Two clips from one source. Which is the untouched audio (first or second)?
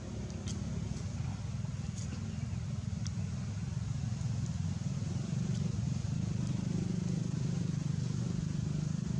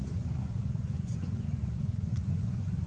first